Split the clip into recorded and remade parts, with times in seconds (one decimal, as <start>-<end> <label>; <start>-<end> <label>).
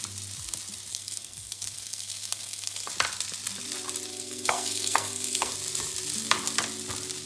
0.0-0.9 recorded; 0.9-2.9 remade; 2.9-4.1 recorded; 4.1-5.5 remade; 5.5-7.3 recorded